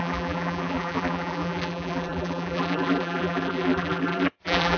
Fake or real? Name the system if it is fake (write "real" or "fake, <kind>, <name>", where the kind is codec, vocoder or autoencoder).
fake, vocoder, BigVGAN v2